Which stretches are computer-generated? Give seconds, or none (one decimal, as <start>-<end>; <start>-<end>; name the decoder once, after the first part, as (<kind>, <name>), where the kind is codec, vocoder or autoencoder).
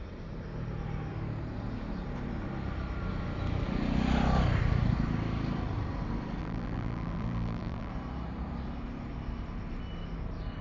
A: 6.4-7.9 (vocoder, BigVGAN v2)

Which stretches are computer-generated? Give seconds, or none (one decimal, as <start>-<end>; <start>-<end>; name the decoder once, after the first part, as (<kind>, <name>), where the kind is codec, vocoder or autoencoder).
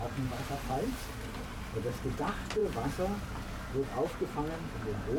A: none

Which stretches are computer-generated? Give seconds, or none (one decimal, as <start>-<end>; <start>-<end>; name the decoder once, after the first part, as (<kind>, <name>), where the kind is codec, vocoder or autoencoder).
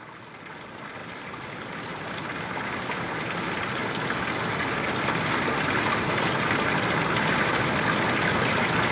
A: none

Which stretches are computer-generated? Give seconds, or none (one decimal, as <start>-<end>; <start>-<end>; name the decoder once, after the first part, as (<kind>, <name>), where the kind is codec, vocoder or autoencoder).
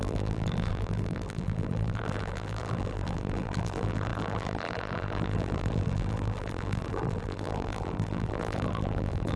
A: 0.0-9.4 (vocoder, BigVGAN v2)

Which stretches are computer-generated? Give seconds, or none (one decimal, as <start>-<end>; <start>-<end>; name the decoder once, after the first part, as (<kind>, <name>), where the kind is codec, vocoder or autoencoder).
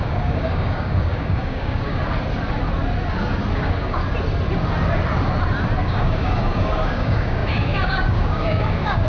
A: 0.0-2.0 (codec, DAC); 3.5-4.0; 5.8-9.1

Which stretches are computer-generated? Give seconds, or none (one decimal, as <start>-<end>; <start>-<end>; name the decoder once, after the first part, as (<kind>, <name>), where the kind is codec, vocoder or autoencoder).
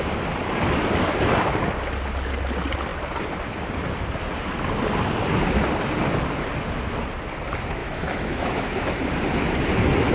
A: 7.8-9.0 (autoencoder, DAC-VAE)